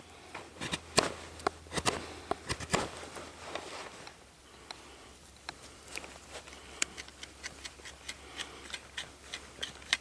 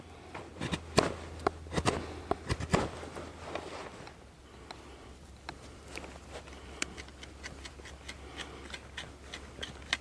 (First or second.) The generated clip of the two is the first